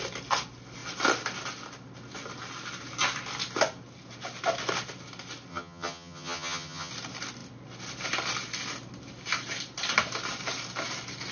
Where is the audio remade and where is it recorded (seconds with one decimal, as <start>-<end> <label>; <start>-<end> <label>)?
0.0-5.5 recorded; 5.5-6.9 remade; 6.9-11.3 recorded

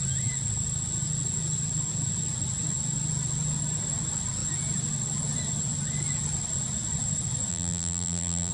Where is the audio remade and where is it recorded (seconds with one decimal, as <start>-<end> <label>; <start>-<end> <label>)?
0.0-7.5 recorded; 7.5-8.5 remade

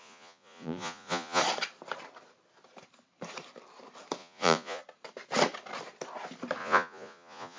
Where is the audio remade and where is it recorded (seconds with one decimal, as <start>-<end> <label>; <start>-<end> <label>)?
0.0-1.4 remade; 1.4-4.2 recorded; 4.2-4.8 remade; 4.8-6.6 recorded; 6.6-7.6 remade

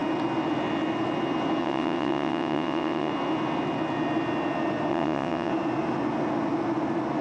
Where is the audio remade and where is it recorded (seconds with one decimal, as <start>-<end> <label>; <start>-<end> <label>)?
0.0-1.6 recorded; 1.6-3.1 remade; 3.1-4.9 recorded; 4.9-5.5 remade; 5.5-7.2 recorded